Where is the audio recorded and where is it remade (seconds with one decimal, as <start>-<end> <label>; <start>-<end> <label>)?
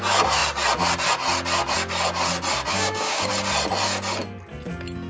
0.0-2.7 recorded; 2.7-3.3 remade; 3.3-5.1 recorded